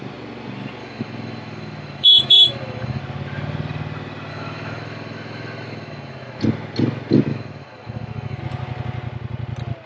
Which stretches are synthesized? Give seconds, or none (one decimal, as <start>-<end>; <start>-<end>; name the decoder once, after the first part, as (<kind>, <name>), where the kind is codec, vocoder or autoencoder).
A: 0.8-3.0 (autoencoder, DAC-VAE); 4.3-6.4; 7.3-8.4